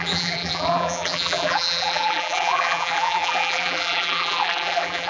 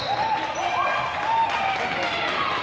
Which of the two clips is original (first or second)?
second